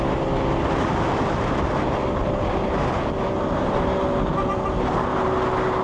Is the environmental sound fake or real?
real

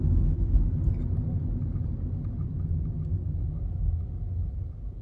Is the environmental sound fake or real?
real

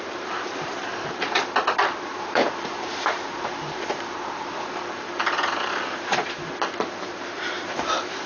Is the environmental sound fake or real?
fake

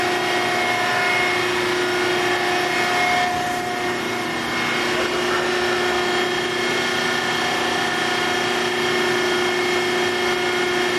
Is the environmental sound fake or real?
real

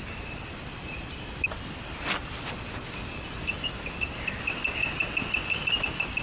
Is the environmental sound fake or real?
real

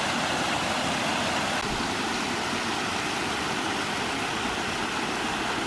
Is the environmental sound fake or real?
real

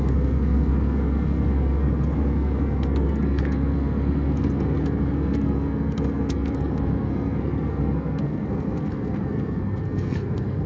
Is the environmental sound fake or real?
fake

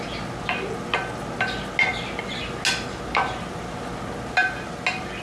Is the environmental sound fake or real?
real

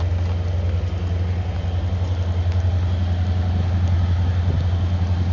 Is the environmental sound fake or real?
real